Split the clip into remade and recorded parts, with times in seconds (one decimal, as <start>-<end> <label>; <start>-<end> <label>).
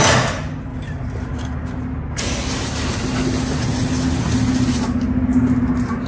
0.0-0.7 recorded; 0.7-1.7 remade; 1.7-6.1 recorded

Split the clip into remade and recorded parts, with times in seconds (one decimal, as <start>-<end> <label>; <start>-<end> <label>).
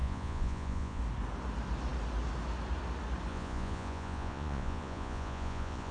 0.0-1.0 remade; 1.0-3.3 recorded; 3.3-5.9 remade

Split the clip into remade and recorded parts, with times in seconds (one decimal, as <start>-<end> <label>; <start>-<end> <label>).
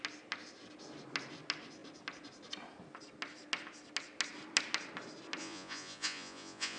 0.0-5.4 recorded; 5.4-6.8 remade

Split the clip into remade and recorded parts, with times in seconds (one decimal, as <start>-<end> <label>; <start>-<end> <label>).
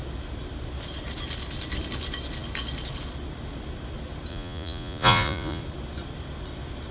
0.0-4.3 recorded; 4.3-5.6 remade; 5.6-6.9 recorded